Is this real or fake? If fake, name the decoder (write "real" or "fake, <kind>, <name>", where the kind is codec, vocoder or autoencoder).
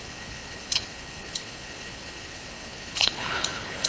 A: fake, codec, HILCodec